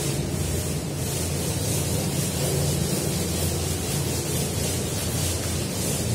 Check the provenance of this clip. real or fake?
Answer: real